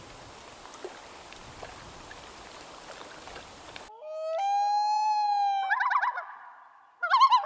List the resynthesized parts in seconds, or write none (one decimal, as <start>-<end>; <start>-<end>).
none